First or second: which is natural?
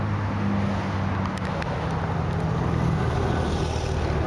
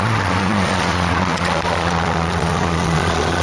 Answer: first